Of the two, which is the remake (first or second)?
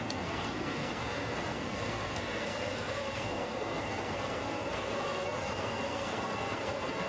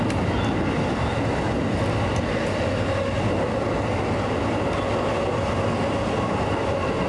first